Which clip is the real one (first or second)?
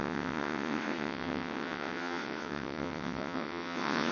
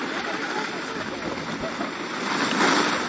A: second